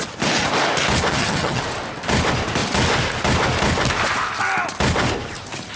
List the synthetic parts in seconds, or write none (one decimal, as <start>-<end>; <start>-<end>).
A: 1.1-1.6